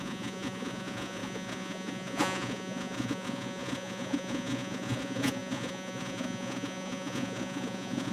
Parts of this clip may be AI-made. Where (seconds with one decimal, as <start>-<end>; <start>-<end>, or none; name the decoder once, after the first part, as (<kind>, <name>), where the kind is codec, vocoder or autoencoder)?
0.0-8.1 (vocoder, Vocos)